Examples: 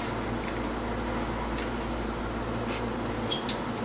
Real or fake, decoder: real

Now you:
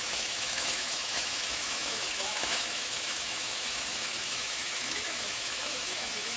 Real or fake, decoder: fake, autoencoder, DAC-VAE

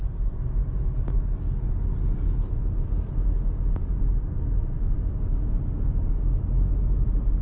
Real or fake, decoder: real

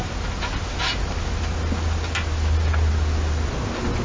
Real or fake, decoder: real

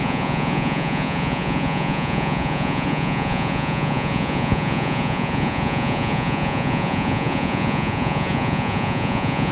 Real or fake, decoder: fake, vocoder, Vocos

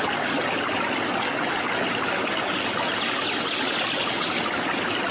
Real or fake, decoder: real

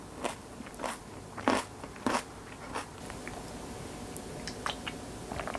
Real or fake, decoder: real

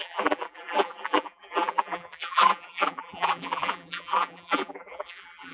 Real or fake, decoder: fake, vocoder, BigVGAN v2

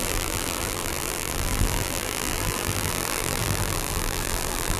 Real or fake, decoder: fake, vocoder, BigVGAN v2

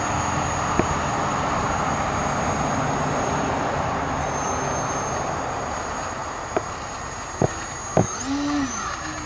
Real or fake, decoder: real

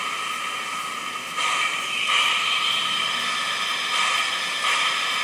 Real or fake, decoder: real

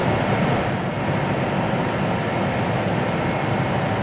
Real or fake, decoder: real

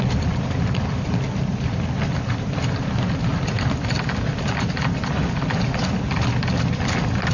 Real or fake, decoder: real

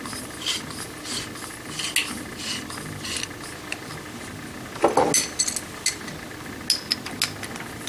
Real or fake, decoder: real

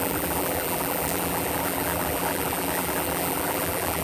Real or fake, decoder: fake, vocoder, BigVGAN v2